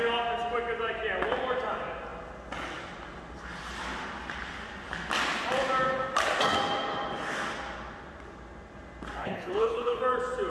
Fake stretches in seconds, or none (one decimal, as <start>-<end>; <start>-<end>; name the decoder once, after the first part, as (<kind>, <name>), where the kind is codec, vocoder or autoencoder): 9.2-10.0 (codec, HILCodec)